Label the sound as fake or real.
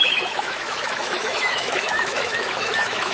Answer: fake